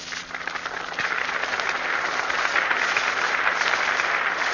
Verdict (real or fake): real